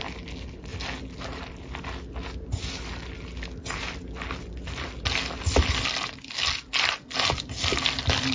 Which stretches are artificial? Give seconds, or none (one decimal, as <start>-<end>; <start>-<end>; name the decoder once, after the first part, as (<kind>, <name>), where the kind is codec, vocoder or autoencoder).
none